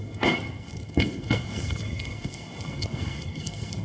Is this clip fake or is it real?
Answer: fake